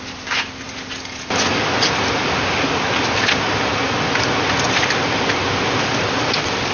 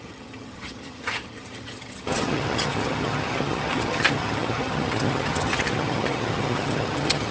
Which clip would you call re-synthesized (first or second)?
second